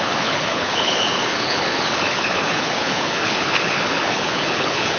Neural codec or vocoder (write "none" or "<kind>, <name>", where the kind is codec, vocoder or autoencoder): codec, HILCodec